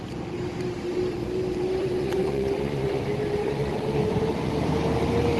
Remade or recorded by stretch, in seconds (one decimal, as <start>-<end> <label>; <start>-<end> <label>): 0.0-1.8 recorded; 1.8-3.0 remade; 3.0-3.4 recorded; 3.4-4.5 remade; 4.5-5.4 recorded